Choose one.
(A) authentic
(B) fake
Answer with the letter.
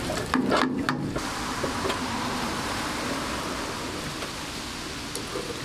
A